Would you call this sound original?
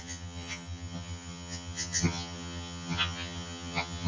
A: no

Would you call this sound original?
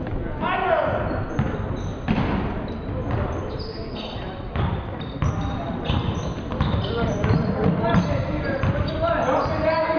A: yes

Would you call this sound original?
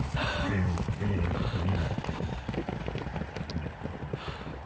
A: yes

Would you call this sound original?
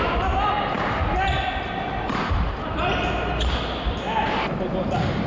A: yes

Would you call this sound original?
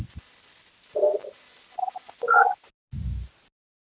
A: yes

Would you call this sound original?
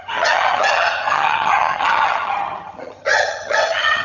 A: no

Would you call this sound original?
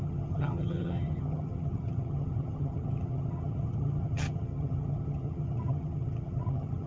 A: no